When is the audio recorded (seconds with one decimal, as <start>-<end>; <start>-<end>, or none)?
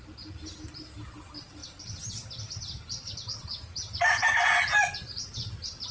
0.0-5.9